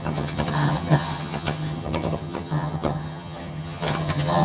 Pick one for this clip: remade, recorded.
remade